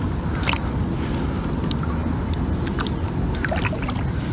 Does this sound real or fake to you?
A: real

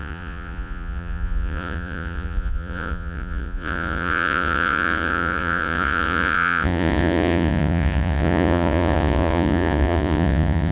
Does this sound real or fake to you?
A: fake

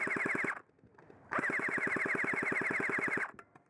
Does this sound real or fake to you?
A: real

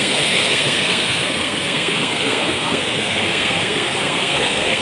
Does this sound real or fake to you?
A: fake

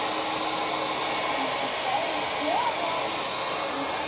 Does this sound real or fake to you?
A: real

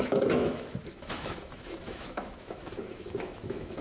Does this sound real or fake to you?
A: fake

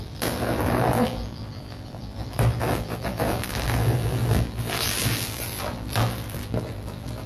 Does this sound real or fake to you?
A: fake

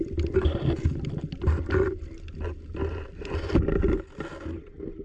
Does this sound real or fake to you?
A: real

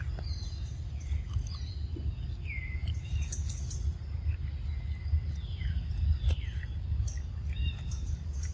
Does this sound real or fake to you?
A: real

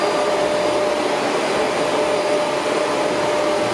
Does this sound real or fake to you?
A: real